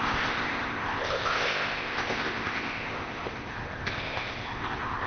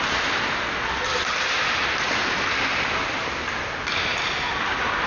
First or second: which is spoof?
first